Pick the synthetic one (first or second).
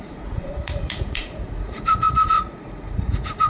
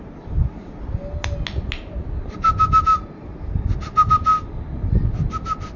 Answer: first